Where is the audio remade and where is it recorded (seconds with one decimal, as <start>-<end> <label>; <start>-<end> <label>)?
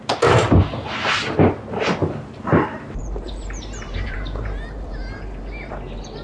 0.0-2.0 recorded; 2.0-5.7 remade; 5.7-6.2 recorded